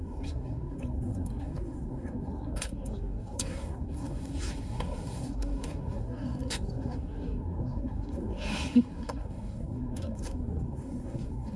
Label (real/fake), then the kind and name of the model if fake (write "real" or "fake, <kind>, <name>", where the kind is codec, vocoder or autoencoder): fake, codec, SNAC